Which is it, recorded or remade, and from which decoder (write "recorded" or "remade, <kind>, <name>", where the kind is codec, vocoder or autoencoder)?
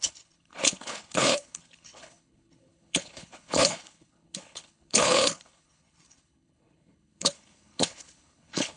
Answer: remade, codec, HILCodec